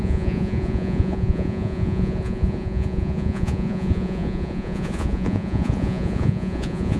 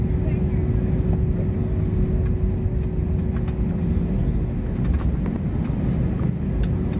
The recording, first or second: second